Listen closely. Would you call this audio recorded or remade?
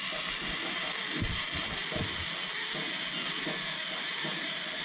recorded